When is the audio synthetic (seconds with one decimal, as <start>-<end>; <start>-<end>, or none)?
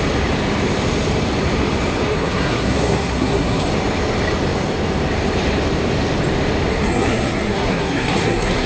2.1-3.7; 6.7-8.7